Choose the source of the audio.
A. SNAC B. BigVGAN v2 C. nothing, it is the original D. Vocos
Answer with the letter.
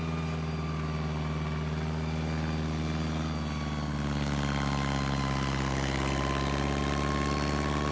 C